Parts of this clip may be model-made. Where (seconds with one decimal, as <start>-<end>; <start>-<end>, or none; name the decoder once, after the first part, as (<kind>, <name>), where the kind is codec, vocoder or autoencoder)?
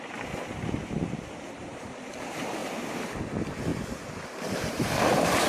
1.6-2.1 (vocoder, BigVGAN v2); 3.7-5.0